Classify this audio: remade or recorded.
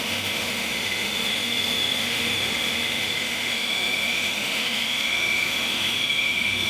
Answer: remade